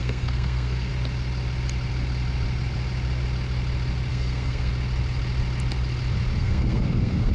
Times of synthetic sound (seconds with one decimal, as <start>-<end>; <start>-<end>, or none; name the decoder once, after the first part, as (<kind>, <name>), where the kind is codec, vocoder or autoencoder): 0.0-0.9 (codec, SNAC); 4.1-4.7; 6.4-7.3